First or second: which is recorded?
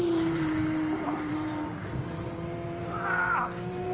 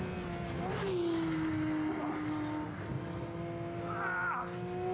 second